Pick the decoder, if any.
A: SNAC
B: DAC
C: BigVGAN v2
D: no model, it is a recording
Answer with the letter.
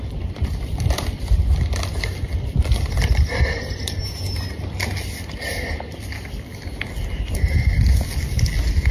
D